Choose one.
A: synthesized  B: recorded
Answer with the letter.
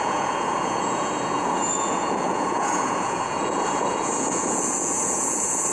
A